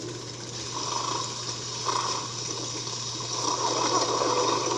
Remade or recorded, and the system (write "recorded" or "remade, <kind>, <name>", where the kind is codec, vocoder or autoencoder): recorded